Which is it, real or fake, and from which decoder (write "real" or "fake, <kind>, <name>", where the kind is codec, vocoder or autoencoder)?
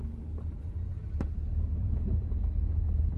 real